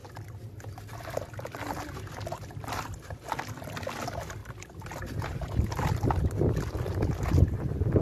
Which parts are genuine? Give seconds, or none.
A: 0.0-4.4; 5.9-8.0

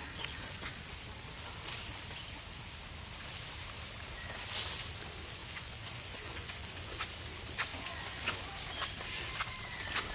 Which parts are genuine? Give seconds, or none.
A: 0.7-5.4; 7.1-7.7; 8.5-10.1

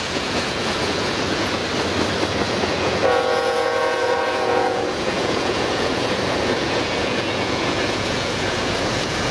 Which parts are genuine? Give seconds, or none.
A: 1.6-2.3

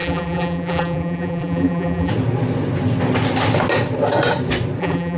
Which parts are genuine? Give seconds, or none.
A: 2.1-4.8

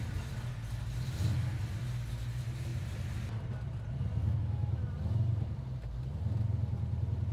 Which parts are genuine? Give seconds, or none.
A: 0.0-2.7; 4.3-7.3

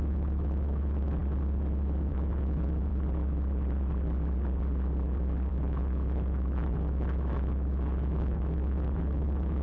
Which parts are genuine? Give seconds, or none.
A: 1.2-2.1; 2.9-5.5

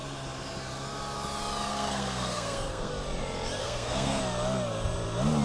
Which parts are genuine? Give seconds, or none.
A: 0.0-1.7; 2.9-3.6; 4.2-5.4